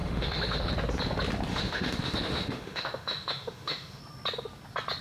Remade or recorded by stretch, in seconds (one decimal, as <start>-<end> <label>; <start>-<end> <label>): 0.0-0.7 remade; 0.7-1.5 recorded; 1.5-4.0 remade; 4.0-5.0 recorded